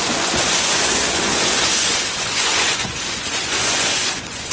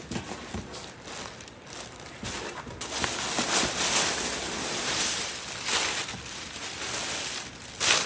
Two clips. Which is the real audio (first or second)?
second